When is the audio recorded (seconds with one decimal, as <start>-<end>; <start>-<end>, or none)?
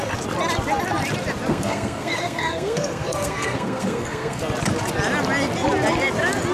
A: 0.0-1.5; 4.4-6.5